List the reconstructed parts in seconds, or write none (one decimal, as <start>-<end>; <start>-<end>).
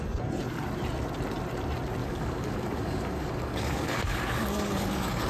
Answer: 2.0-5.3